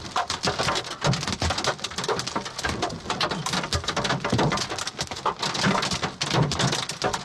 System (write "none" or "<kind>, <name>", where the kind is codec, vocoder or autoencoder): none